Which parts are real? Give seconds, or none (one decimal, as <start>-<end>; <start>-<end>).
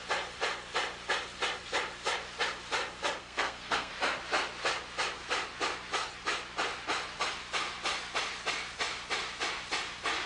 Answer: 0.0-3.2; 3.9-10.3